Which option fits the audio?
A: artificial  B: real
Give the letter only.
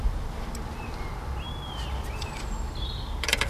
A